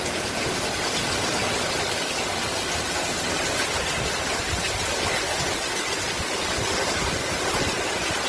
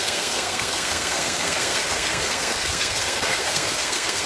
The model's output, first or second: second